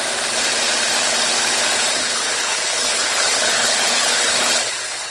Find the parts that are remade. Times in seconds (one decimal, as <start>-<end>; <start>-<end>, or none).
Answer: 2.0-5.1

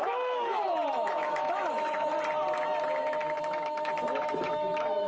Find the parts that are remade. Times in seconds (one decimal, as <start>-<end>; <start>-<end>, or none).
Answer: 0.0-2.1; 3.4-5.1

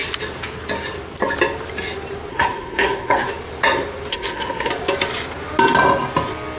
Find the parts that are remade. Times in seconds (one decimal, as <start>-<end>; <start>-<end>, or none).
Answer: 2.3-3.3; 4.1-4.7

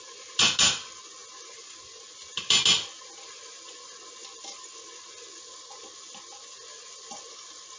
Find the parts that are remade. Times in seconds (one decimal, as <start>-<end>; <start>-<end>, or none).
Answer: none

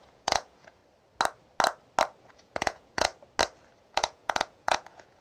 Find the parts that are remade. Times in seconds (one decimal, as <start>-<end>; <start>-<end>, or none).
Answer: 0.0-0.8; 2.2-3.1; 3.8-5.2